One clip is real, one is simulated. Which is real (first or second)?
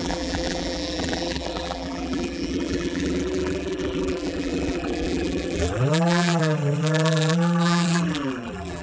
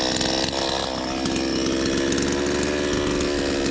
second